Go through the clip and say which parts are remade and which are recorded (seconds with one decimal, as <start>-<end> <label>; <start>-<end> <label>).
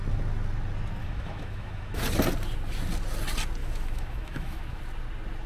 0.0-1.0 recorded; 1.0-2.0 remade; 2.0-3.6 recorded; 3.6-4.8 remade; 4.8-5.5 recorded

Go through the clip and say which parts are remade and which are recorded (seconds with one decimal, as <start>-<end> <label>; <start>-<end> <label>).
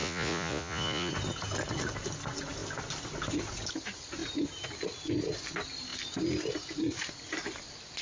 0.0-1.1 remade; 1.1-8.0 recorded